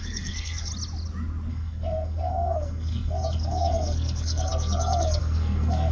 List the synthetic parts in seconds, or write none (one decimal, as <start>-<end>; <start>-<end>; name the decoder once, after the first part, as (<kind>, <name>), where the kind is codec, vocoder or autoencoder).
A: 0.0-0.7 (codec, SNAC); 1.5-5.9